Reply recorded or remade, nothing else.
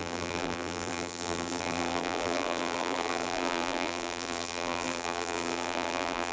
remade